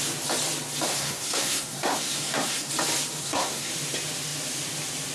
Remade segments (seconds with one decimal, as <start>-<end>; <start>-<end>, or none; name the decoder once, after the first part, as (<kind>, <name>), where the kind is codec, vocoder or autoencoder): 0.9-2.7 (codec, SNAC); 3.2-3.7